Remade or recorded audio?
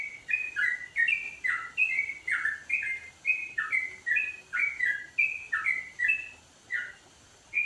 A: recorded